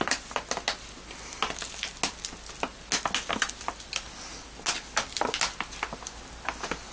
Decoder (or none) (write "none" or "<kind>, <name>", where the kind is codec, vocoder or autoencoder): none